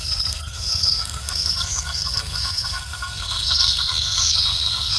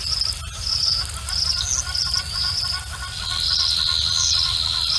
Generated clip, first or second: first